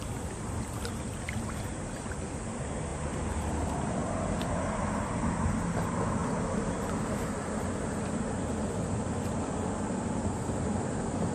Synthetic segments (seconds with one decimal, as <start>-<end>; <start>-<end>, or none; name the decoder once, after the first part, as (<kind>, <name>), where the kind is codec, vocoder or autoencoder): 0.0-2.9 (vocoder, BigVGAN v2); 3.5-6.2; 6.7-11.3